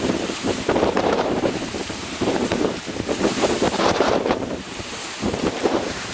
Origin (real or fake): fake